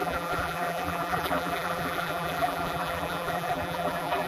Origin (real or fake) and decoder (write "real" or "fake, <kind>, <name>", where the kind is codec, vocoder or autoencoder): fake, vocoder, BigVGAN v2